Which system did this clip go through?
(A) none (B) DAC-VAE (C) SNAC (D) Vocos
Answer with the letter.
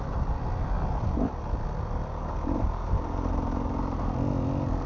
A